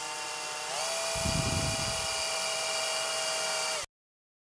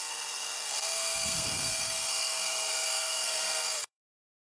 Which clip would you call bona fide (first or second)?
first